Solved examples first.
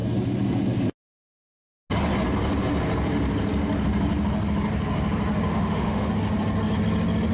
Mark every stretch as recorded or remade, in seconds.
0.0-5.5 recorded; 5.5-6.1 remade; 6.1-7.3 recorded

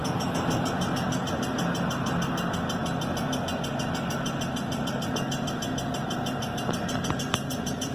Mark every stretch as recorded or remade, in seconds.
0.0-7.9 recorded

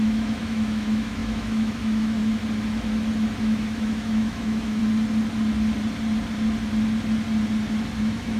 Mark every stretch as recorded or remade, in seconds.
0.0-2.2 remade; 2.2-3.4 recorded; 3.4-4.8 remade; 4.8-8.0 recorded; 8.0-8.4 remade